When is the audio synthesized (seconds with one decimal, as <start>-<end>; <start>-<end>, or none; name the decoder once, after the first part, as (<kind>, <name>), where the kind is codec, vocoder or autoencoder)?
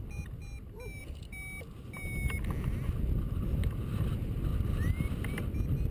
none